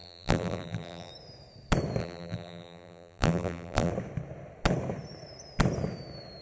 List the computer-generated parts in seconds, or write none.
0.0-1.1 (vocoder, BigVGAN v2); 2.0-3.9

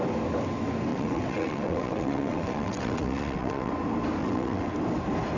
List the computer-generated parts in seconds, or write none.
0.9-3.7 (vocoder, WaveNeXt); 4.2-4.7

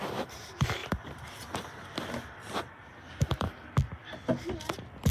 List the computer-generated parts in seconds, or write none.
0.8-1.4 (vocoder, BigVGAN v2); 2.9-3.5

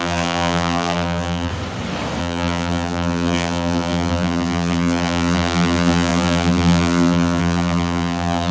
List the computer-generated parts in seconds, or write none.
0.0-1.5 (vocoder, BigVGAN v2); 2.2-8.5

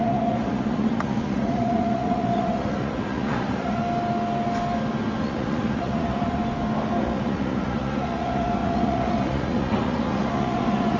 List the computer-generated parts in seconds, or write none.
0.0-3.8 (vocoder, Vocos); 5.2-6.4; 7.0-11.0

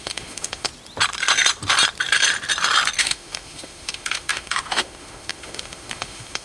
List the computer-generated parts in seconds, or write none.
0.0-0.7 (autoencoder, DAC-VAE); 3.0-6.4

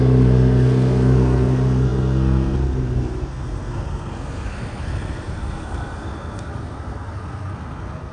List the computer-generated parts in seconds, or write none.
0.0-8.1 (codec, SNAC)